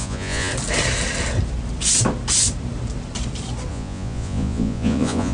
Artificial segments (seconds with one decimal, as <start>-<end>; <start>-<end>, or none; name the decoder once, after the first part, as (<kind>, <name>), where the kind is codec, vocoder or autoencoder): 0.0-0.5 (vocoder, Vocos); 3.7-5.3